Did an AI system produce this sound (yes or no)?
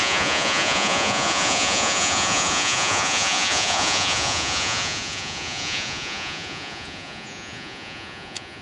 yes